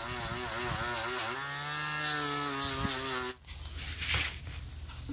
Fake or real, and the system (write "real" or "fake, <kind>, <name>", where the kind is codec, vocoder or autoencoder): real